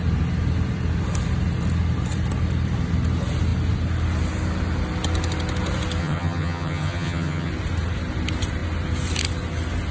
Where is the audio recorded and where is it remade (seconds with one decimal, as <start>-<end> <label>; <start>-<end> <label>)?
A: 0.0-6.0 recorded; 6.0-7.5 remade; 7.5-9.9 recorded